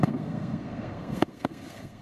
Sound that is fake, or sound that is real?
fake